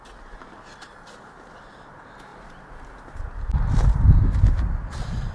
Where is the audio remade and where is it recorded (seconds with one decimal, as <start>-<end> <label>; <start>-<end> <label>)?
0.0-5.3 recorded